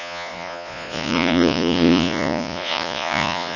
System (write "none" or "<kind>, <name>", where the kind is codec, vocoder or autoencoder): vocoder, Vocos